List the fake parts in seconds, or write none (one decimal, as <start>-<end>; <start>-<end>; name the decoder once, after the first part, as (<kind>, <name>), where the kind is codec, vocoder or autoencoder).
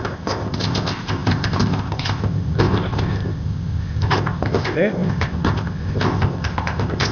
0.0-7.1 (codec, ZipCodec)